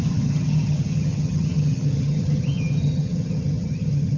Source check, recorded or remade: remade